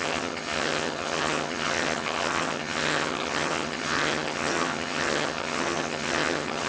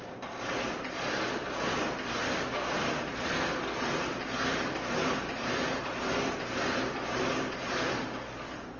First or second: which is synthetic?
first